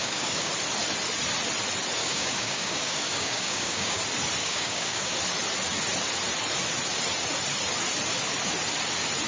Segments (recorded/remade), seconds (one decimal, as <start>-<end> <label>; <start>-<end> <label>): 0.0-0.5 remade; 0.5-2.0 recorded; 2.0-4.0 remade; 4.0-4.4 recorded; 4.4-5.1 remade; 5.1-9.3 recorded